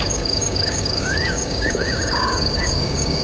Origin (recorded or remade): remade